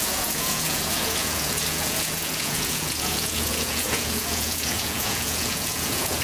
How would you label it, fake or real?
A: fake